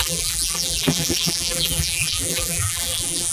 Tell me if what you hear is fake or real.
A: fake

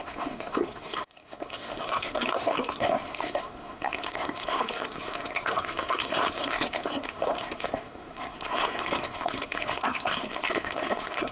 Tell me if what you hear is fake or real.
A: fake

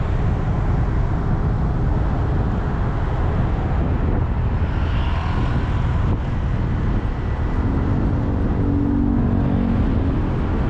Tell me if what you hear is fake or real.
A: real